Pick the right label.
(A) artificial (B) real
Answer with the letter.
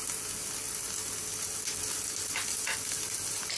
B